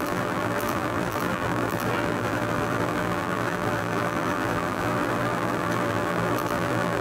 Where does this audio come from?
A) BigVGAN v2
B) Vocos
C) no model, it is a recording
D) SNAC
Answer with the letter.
A